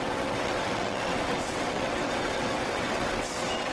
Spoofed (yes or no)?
yes